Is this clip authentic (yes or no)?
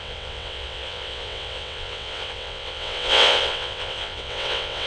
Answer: no